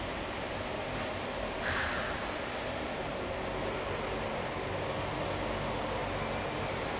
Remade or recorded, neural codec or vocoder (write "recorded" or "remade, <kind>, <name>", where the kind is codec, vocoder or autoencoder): recorded